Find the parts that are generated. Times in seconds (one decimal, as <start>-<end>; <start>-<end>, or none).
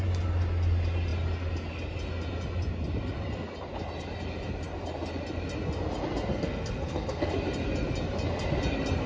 6.3-7.3